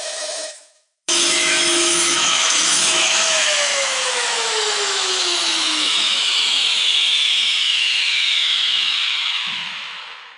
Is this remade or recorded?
remade